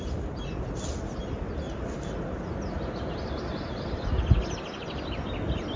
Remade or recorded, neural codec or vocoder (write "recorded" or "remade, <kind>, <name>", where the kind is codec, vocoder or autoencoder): recorded